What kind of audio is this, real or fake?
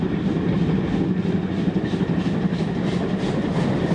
real